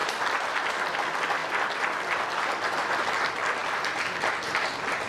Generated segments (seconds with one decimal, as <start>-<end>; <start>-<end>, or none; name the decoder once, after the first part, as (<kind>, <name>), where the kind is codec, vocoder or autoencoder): none